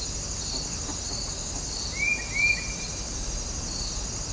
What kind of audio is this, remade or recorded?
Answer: recorded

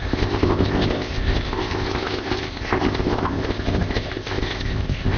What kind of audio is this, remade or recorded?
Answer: remade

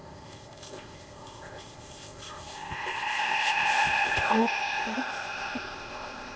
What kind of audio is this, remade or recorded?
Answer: remade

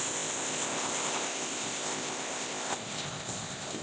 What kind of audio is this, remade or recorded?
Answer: remade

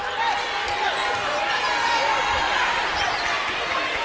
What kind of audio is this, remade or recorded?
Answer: recorded